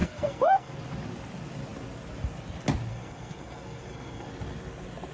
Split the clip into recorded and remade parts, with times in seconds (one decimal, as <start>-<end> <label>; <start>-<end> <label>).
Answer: 0.0-0.7 remade; 0.7-2.9 recorded; 2.9-4.3 remade; 4.3-5.1 recorded